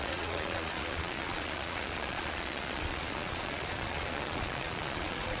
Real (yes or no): no